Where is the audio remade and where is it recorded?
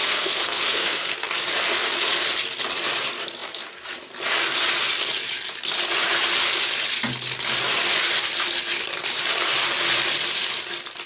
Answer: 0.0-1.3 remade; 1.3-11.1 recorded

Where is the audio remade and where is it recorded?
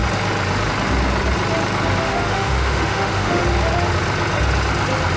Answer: 0.0-2.0 recorded; 2.0-3.4 remade; 3.4-5.2 recorded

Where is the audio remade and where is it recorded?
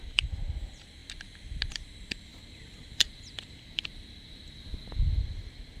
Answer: 0.0-1.0 remade; 1.0-1.7 recorded; 1.7-5.8 remade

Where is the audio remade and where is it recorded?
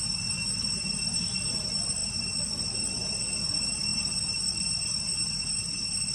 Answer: 0.0-6.1 recorded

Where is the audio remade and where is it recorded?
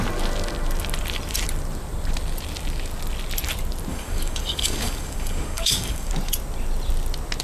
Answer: 0.0-3.9 recorded; 3.9-6.1 remade; 6.1-7.4 recorded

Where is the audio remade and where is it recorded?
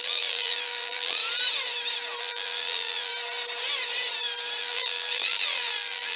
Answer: 0.0-1.2 remade; 1.2-2.2 recorded; 2.2-3.1 remade; 3.1-4.6 recorded; 4.6-6.2 remade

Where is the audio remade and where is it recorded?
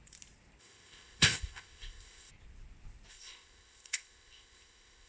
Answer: 0.0-0.6 recorded; 0.6-2.3 remade; 2.3-3.1 recorded; 3.1-5.1 remade